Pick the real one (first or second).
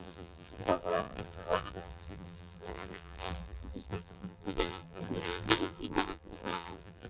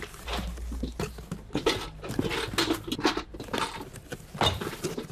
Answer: second